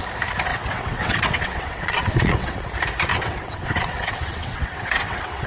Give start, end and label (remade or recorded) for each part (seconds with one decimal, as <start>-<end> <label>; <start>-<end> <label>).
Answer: 0.0-0.5 recorded; 0.5-2.7 remade; 2.7-3.1 recorded; 3.1-5.5 remade